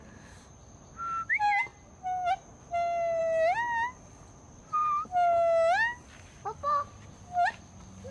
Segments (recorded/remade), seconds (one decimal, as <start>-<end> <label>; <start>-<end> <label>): 0.0-8.1 recorded